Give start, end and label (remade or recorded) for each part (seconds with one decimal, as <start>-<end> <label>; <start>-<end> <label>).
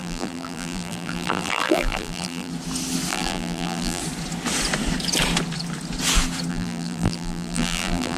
0.0-2.5 remade; 2.5-3.1 recorded; 3.1-4.0 remade; 4.0-6.5 recorded; 6.5-8.2 remade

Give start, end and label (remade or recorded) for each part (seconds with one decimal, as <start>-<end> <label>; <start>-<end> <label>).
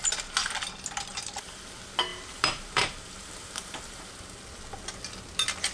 0.0-1.1 recorded; 1.1-1.6 remade; 1.6-2.1 recorded; 2.1-4.0 remade; 4.0-5.7 recorded